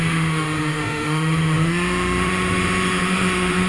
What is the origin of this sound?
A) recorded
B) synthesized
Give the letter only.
B